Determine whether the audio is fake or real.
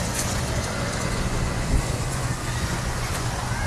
fake